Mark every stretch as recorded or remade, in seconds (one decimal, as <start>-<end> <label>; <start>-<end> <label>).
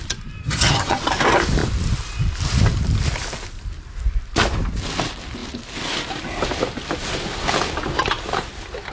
0.0-0.4 recorded; 0.4-1.0 remade; 1.0-8.9 recorded